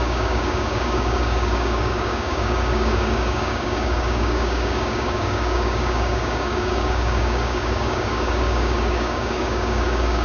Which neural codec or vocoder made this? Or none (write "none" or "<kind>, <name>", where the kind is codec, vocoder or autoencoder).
codec, DAC